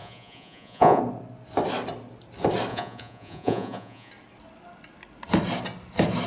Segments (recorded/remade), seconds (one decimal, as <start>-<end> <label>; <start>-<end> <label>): 0.0-1.0 remade; 1.0-2.7 recorded; 2.7-4.1 remade; 4.1-6.3 recorded